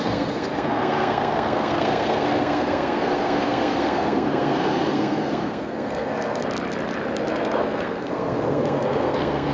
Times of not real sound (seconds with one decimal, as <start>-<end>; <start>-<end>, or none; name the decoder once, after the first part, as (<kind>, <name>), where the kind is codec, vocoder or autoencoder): 0.0-6.4 (codec, SNAC); 7.3-9.5